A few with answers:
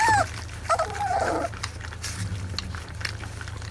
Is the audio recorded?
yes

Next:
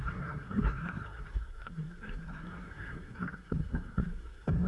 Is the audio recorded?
no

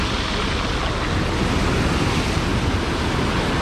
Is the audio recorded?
yes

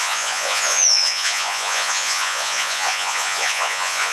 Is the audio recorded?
no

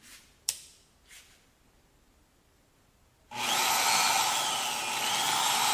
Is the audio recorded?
yes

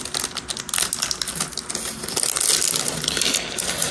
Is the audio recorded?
yes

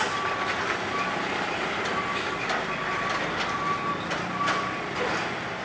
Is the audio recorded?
yes